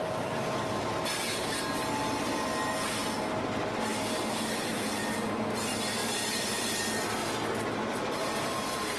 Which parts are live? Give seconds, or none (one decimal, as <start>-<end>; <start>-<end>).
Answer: 0.0-6.0; 6.6-9.0